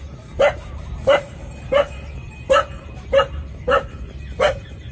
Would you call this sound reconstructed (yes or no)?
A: no